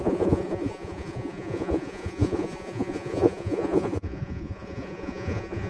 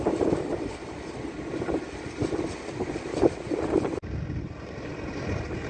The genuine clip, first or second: second